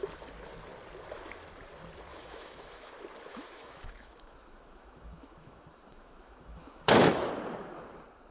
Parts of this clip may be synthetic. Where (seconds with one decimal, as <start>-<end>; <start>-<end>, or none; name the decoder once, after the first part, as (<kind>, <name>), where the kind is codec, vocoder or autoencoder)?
2.1-2.9 (autoencoder, DAC-VAE); 3.3-7.3